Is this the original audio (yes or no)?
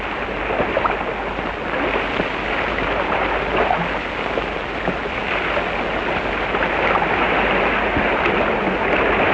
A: yes